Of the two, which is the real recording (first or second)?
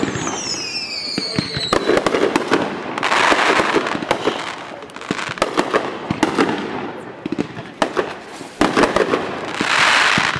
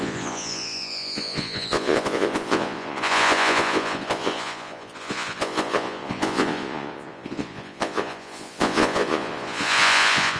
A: first